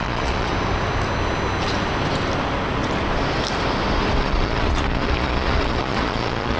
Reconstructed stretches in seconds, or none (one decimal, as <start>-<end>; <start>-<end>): 0.0-0.5; 4.2-6.6